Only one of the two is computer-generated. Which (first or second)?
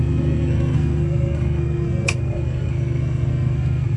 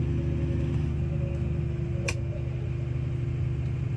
first